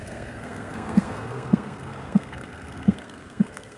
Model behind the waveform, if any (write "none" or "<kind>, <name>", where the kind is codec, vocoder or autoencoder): codec, SNAC